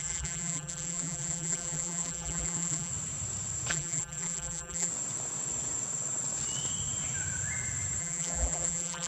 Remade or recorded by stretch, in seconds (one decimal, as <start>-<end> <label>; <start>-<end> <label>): 0.0-2.9 remade; 2.9-3.7 recorded; 3.7-4.9 remade; 4.9-8.0 recorded; 8.0-9.1 remade